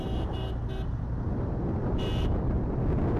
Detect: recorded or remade recorded